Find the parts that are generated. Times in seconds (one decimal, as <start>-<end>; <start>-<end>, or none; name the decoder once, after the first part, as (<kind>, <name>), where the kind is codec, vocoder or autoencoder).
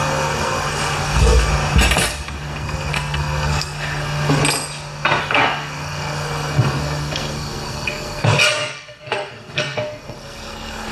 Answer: 0.0-1.5 (codec, SNAC); 2.0-4.4; 5.2-10.9